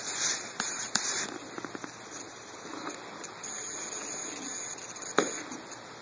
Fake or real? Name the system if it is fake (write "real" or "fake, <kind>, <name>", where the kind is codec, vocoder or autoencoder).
fake, vocoder, BigVGAN v2